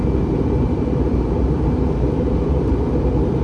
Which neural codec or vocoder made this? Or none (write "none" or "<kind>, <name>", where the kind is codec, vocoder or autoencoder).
vocoder, BigVGAN v2